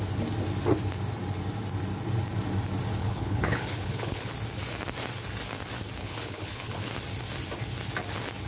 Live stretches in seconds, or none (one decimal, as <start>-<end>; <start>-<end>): 0.0-3.0; 4.3-6.0; 6.9-8.5